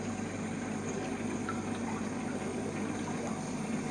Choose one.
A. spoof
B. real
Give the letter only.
B